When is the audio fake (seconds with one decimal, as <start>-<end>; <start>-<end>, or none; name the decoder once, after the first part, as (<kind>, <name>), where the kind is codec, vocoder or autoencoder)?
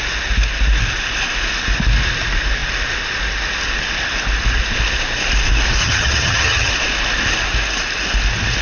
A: 5.8-6.7 (vocoder, HiFi-GAN)